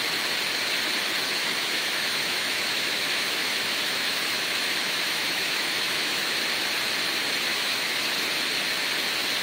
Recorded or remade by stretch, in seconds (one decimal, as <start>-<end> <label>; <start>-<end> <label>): 0.0-1.4 recorded; 1.4-6.4 remade; 6.4-7.5 recorded; 7.5-8.1 remade; 8.1-9.4 recorded